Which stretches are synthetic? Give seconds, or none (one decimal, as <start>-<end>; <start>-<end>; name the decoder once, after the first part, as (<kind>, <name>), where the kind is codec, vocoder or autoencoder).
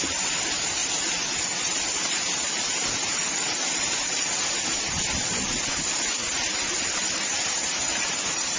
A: none